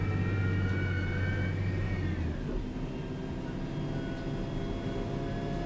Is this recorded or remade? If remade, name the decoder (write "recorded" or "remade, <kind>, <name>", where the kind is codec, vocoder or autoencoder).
recorded